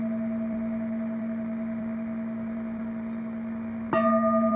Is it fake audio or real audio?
real